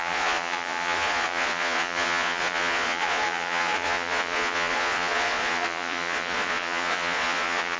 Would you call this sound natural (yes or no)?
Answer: no